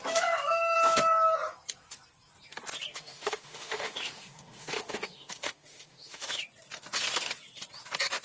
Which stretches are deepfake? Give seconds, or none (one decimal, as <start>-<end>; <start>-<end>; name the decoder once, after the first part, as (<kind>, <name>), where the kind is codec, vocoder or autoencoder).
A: 2.9-6.4 (autoencoder, DAC-VAE)